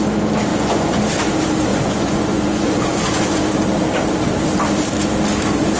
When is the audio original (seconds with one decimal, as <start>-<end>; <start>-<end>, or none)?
0.0-0.5; 1.0-1.7; 3.4-5.8